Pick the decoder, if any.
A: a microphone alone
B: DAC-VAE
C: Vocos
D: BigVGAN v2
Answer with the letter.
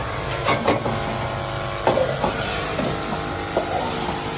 A